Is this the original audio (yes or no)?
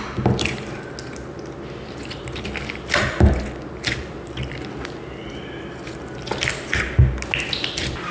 yes